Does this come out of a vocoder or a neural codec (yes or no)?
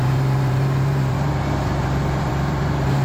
yes